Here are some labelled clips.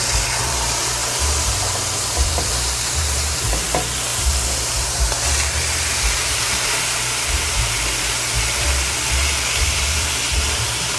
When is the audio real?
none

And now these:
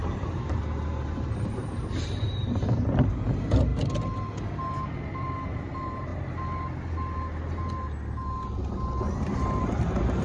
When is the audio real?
3.7-4.7; 6.1-9.6